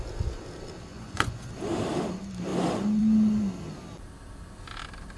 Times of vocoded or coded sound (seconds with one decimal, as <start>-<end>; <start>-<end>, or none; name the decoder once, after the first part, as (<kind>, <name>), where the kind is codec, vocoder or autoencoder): 0.9-1.5 (vocoder, Vocos)